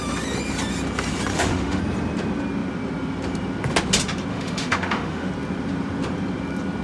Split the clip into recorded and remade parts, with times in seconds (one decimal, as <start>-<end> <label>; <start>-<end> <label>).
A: 0.0-1.3 recorded; 1.3-1.8 remade; 1.8-4.3 recorded; 4.3-5.3 remade; 5.3-6.8 recorded

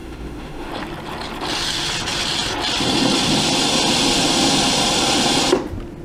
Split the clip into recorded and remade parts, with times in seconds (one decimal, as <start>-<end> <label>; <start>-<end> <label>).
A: 0.0-0.7 remade; 0.7-6.0 recorded

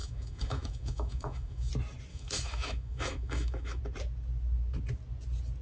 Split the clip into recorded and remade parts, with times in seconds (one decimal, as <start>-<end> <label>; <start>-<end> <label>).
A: 0.0-1.7 remade; 1.7-2.1 recorded; 2.1-3.8 remade; 3.8-5.6 recorded

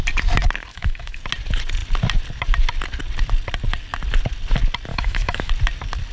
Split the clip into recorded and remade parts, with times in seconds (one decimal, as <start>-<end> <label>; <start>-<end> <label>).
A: 0.0-0.7 recorded; 0.7-1.2 remade; 1.2-4.9 recorded; 4.9-5.5 remade; 5.5-6.1 recorded

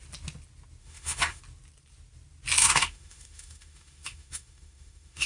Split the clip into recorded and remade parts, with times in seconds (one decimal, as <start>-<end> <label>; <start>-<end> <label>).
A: 0.0-0.8 recorded; 0.8-1.4 remade; 1.4-2.6 recorded; 2.6-5.3 remade

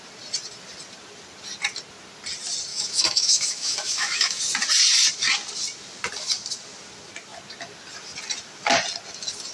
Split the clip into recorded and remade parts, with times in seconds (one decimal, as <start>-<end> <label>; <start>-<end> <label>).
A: 0.0-2.7 recorded; 2.7-4.4 remade; 4.4-9.5 recorded

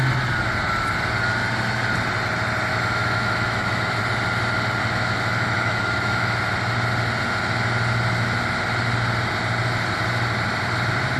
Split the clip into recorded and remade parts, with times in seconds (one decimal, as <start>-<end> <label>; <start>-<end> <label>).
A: 0.0-2.7 recorded; 2.7-4.0 remade; 4.0-4.8 recorded; 4.8-6.4 remade; 6.4-11.2 recorded

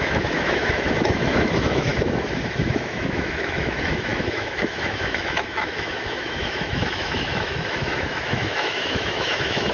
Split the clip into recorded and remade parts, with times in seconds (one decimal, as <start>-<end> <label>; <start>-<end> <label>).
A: 0.0-9.7 remade